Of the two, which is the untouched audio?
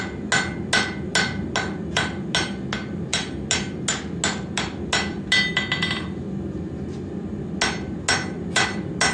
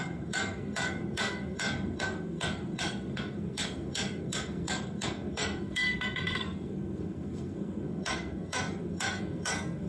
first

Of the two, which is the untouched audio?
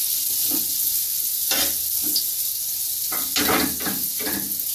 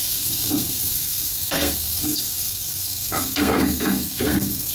first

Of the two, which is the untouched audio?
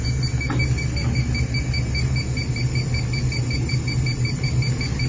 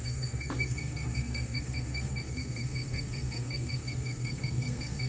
first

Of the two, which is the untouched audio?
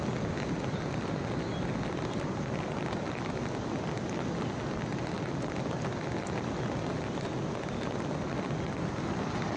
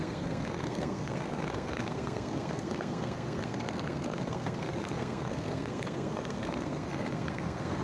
first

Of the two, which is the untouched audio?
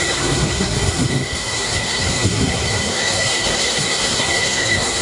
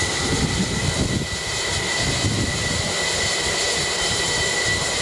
second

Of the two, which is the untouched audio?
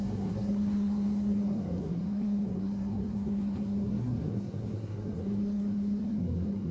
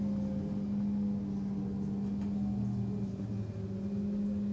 second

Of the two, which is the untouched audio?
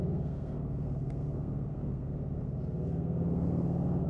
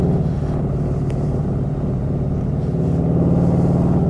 second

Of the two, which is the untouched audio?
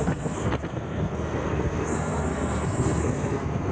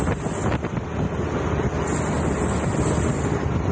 second